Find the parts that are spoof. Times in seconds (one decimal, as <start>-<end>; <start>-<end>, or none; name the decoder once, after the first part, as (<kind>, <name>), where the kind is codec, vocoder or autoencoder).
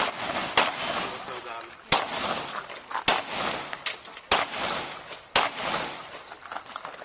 none